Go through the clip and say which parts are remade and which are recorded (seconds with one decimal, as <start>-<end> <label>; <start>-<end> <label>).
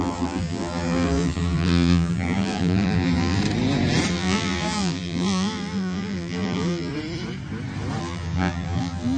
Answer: 0.0-3.4 remade; 3.4-4.1 recorded; 4.1-6.9 remade; 6.9-8.0 recorded; 8.0-9.2 remade